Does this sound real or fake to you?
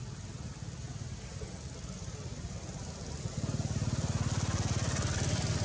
real